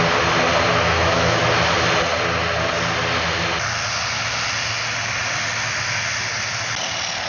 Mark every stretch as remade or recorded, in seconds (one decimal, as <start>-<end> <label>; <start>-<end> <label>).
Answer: 0.0-0.7 recorded; 0.7-1.4 remade; 1.4-7.3 recorded

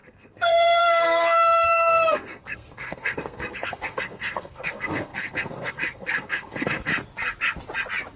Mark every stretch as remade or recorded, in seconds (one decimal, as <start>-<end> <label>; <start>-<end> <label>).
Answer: 0.0-6.9 remade; 6.9-8.2 recorded

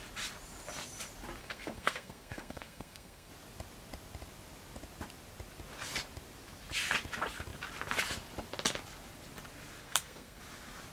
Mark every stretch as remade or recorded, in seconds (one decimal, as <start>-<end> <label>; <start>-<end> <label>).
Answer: 0.0-1.4 recorded; 1.4-3.3 remade; 3.3-9.8 recorded; 9.8-10.4 remade; 10.4-10.9 recorded

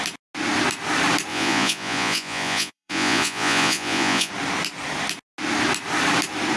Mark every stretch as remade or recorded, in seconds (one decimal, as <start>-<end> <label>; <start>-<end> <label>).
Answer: 0.0-1.3 recorded; 1.3-4.3 remade; 4.3-6.6 recorded

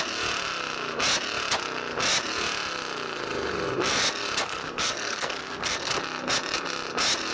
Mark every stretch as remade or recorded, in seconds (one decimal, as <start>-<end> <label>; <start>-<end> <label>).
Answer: 0.0-4.4 recorded; 4.4-5.9 remade; 5.9-7.3 recorded

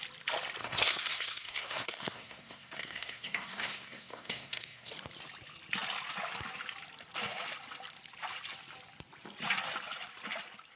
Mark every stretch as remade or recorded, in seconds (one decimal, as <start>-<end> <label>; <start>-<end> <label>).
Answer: 0.0-0.6 recorded; 0.6-4.9 remade; 4.9-10.8 recorded

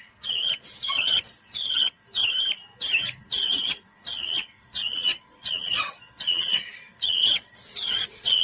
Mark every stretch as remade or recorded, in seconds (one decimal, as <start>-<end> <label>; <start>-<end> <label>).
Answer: 0.0-2.2 remade; 2.2-3.2 recorded; 3.2-8.4 remade

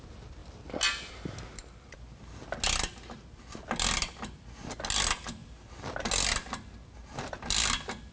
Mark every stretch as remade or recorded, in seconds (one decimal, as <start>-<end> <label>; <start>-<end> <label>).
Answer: 0.0-8.1 recorded